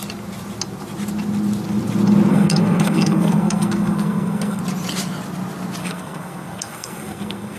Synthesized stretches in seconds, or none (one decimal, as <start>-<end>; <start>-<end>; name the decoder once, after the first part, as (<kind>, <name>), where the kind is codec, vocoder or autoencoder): 2.3-4.6 (codec, SNAC); 5.8-7.6